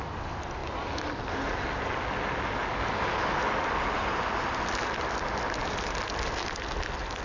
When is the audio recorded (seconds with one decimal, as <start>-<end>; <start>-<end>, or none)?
0.0-7.2